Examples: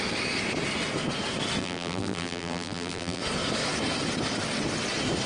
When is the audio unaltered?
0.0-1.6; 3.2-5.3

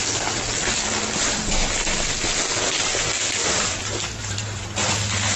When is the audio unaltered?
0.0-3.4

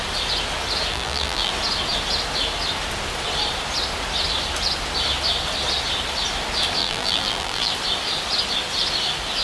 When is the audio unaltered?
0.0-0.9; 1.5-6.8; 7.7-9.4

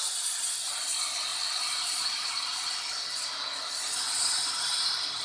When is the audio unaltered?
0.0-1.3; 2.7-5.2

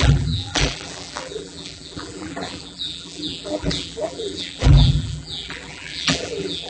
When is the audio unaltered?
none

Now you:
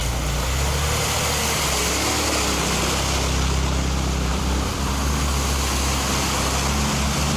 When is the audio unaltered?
0.0-4.3; 4.9-7.4